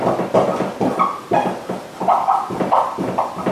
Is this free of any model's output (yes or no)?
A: yes